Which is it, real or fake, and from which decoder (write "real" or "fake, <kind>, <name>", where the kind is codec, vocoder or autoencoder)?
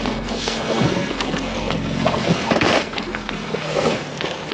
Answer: fake, codec, SNAC